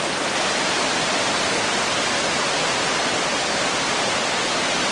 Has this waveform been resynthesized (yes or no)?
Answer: no